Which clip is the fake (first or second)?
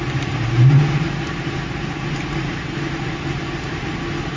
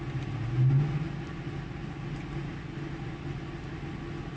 first